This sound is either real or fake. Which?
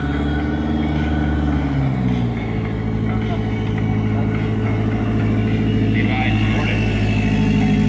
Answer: real